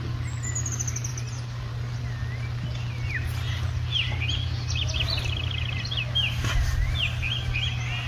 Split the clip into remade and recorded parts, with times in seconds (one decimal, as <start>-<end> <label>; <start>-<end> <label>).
0.0-1.1 recorded; 1.1-1.7 remade; 1.7-8.1 recorded

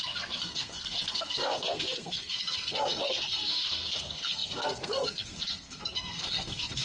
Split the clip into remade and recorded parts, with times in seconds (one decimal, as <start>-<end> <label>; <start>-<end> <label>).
0.0-6.8 remade

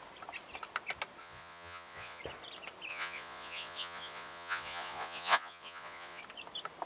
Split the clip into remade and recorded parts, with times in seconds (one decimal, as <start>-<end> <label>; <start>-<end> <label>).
0.0-1.2 recorded; 1.2-2.2 remade; 2.2-2.9 recorded; 2.9-6.2 remade; 6.2-6.9 recorded

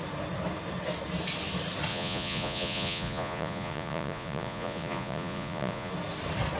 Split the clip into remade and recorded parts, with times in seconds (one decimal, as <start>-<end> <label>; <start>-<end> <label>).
0.0-1.9 recorded; 1.9-5.9 remade; 5.9-6.6 recorded

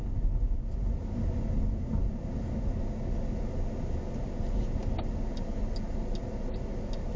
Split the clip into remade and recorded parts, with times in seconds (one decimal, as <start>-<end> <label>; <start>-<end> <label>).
0.0-7.2 recorded

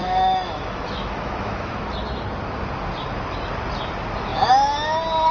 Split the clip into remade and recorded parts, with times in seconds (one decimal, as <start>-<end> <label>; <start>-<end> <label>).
0.0-1.9 remade; 1.9-5.3 recorded